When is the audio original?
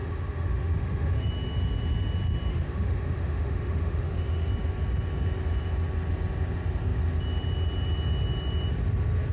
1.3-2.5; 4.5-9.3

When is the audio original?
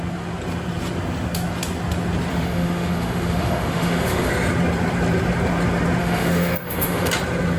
0.0-2.3; 4.3-6.0; 7.1-7.6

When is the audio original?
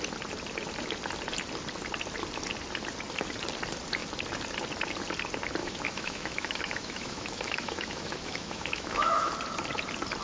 0.0-5.6; 9.3-10.2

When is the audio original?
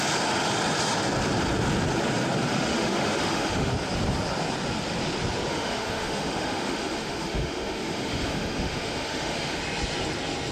0.0-2.5; 3.7-5.5; 9.6-10.5